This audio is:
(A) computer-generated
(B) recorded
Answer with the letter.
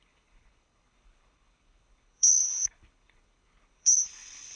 A